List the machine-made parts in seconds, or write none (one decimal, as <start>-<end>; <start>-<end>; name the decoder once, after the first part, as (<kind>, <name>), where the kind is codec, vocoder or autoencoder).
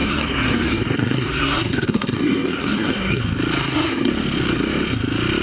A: 0.0-3.2 (codec, SNAC); 3.6-4.1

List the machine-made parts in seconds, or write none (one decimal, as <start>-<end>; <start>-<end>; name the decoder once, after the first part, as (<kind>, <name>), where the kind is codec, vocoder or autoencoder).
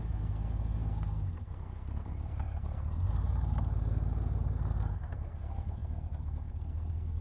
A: 0.0-7.2 (codec, SNAC)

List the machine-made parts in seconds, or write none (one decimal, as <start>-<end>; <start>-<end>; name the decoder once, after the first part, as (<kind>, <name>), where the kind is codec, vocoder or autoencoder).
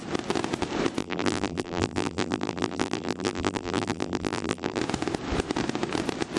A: 1.0-4.8 (vocoder, BigVGAN v2)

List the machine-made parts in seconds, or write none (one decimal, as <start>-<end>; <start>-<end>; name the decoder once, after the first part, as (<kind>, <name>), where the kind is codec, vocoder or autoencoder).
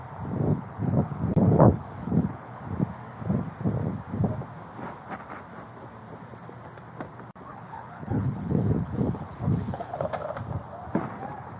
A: 0.5-2.6 (codec, HILCodec); 7.5-10.1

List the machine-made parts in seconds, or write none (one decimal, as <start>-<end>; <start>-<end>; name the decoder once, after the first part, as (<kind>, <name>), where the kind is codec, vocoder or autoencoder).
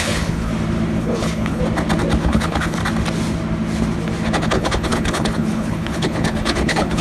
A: 0.0-0.5 (codec, HILCodec); 1.0-1.6; 2.2-2.8; 4.4-7.0